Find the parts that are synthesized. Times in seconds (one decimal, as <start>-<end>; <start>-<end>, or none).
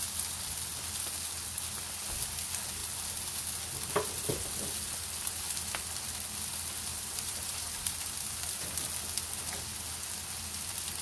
6.9-8.1